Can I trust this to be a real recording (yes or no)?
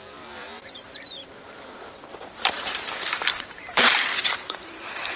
no